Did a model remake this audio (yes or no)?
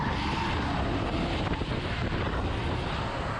no